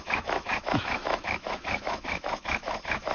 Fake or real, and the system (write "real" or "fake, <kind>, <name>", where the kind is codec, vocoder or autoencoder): fake, autoencoder, DAC-VAE